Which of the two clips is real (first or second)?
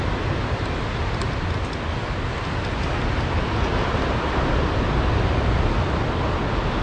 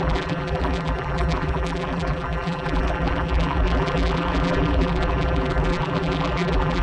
first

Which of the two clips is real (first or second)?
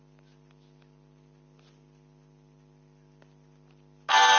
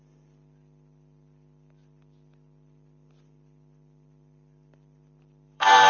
first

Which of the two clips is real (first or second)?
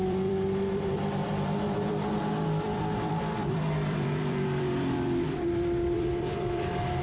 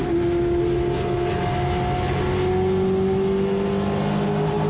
second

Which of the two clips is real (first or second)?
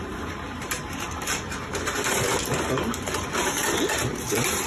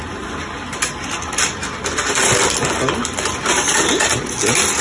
second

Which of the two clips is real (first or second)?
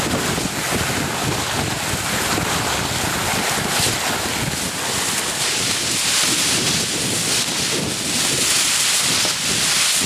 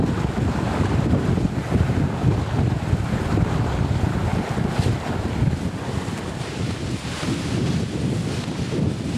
first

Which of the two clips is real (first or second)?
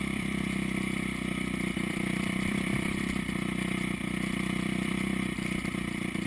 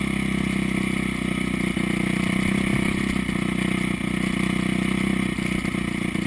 second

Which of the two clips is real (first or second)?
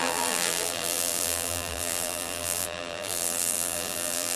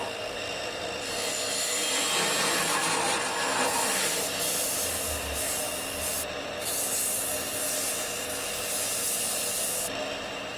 second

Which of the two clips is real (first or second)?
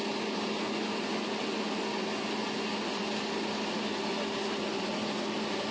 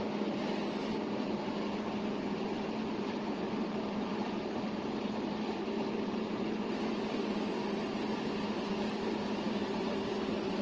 first